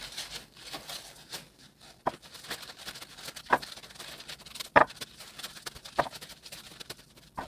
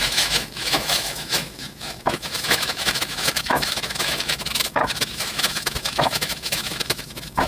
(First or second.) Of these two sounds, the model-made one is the second